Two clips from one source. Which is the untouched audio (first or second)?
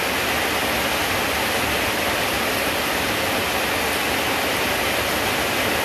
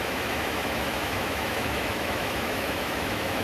first